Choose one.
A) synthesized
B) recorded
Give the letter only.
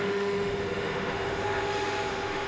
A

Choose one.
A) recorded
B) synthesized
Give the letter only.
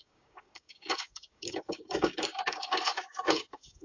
B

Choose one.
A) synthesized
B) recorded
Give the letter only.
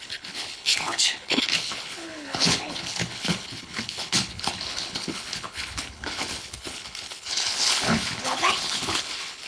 A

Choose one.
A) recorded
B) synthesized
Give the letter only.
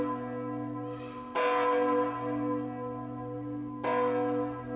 A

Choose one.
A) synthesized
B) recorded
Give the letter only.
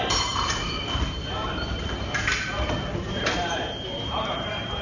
A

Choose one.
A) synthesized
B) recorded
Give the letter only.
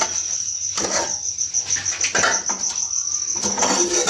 B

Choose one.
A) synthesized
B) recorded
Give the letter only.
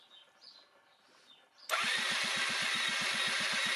B